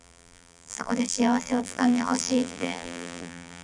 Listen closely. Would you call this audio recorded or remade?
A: remade